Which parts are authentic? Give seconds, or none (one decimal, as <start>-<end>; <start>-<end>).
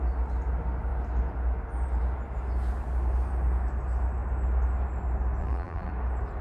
0.0-5.4; 5.9-6.4